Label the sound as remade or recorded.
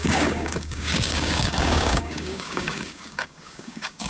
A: remade